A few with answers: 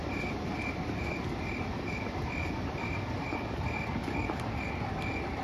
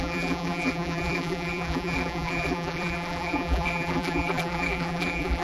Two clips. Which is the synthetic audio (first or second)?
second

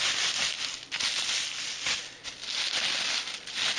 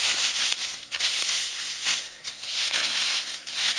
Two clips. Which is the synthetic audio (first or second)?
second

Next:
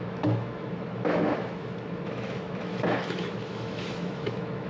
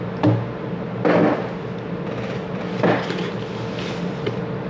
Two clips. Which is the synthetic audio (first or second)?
first